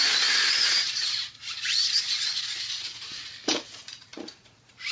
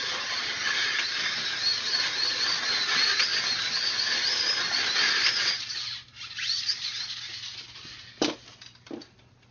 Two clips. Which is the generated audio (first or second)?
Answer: first